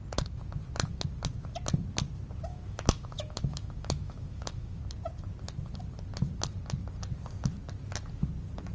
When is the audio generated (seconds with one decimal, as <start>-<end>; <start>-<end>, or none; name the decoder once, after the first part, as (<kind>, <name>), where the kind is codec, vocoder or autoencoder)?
2.5-4.8 (autoencoder, DAC-VAE)